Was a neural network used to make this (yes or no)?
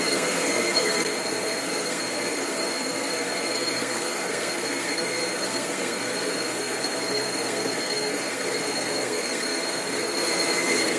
yes